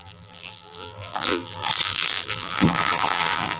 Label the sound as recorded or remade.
remade